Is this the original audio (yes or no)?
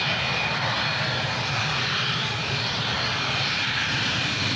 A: no